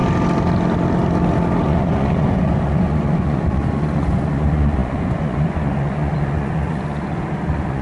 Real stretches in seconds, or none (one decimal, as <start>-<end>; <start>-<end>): 0.0-1.6